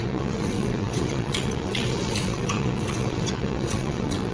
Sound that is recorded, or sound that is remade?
remade